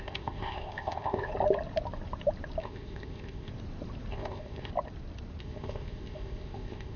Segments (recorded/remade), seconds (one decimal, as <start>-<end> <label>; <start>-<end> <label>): 0.0-1.3 remade; 1.3-2.6 recorded; 2.6-3.5 remade; 3.5-4.1 recorded; 4.1-4.7 remade; 4.7-5.4 recorded; 5.4-7.0 remade